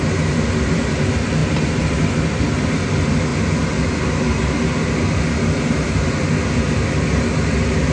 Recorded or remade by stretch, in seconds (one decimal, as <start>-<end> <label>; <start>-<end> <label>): 0.0-7.9 recorded